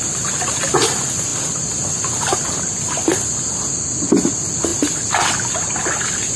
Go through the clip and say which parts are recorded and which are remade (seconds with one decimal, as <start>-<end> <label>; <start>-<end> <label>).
0.0-6.4 recorded